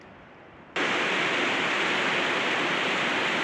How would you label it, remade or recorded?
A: remade